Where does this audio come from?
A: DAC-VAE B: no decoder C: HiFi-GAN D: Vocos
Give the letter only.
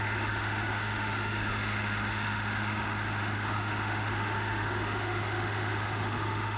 A